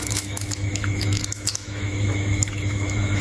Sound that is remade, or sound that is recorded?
remade